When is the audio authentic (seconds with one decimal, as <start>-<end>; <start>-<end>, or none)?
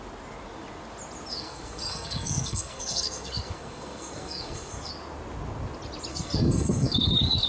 0.0-1.3; 4.9-6.1